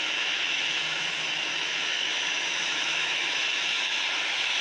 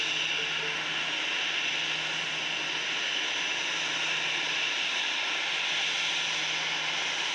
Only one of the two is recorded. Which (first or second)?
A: second